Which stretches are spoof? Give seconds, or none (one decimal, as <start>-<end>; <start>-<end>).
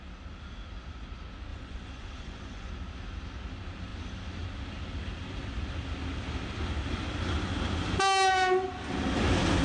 1.5-2.7